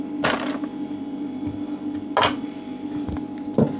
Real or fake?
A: real